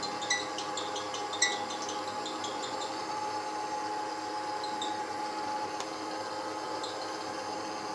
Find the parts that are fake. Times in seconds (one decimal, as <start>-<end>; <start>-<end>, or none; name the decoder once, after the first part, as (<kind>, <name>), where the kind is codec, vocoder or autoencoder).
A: 2.5-3.0 (vocoder, Vocos)